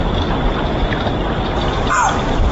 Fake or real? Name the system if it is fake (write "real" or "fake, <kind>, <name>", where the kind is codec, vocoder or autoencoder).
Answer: real